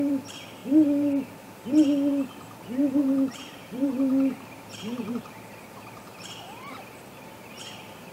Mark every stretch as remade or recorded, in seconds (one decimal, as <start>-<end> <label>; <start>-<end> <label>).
0.0-8.1 remade